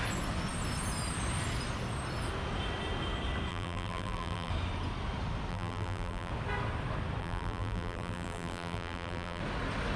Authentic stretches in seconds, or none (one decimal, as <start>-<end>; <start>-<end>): 0.0-3.5; 4.5-5.5; 6.3-7.2; 9.4-10.0